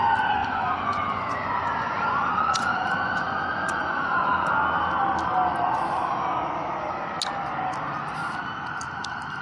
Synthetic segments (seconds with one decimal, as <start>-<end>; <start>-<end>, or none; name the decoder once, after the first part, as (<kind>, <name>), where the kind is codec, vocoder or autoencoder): 0.4-4.5 (vocoder, Vocos)